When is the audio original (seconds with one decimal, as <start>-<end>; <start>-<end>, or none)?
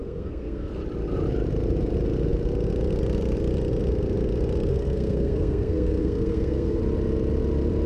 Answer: 0.8-4.7; 6.8-7.9